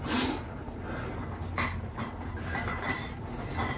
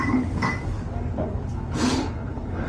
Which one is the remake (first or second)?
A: second